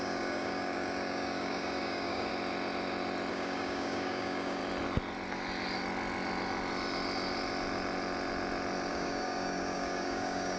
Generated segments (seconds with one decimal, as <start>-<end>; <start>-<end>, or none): 0.0-2.3; 3.3-4.6; 8.9-10.6